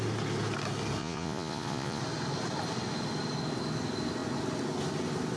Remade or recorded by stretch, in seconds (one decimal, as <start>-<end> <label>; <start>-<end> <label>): 0.0-1.0 recorded; 1.0-2.0 remade; 2.0-5.4 recorded